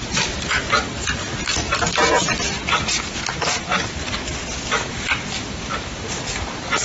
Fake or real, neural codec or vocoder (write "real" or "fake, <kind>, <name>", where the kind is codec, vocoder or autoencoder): fake, vocoder, BigVGAN v2